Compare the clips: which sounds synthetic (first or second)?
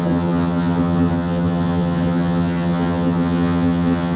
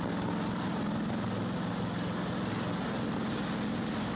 first